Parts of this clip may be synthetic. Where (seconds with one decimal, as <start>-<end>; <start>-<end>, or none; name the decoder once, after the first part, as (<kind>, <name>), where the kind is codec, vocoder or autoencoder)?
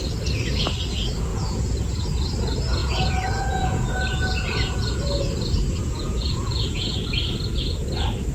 1.3-1.8 (vocoder, Vocos); 2.8-5.0; 5.8-7.1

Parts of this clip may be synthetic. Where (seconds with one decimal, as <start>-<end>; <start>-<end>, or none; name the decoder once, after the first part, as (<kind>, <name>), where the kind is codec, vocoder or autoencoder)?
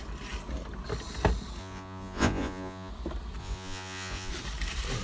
1.6-2.9 (vocoder, Vocos); 3.4-4.3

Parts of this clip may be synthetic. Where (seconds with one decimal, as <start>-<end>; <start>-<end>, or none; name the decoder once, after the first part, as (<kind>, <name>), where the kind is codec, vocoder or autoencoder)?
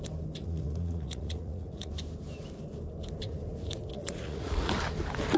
0.4-1.9 (vocoder, Vocos); 3.9-4.7